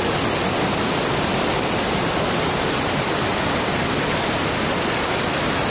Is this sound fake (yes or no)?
no